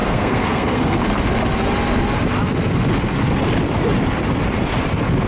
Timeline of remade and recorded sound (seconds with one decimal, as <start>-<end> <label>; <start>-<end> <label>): 0.0-1.0 remade; 1.0-5.3 recorded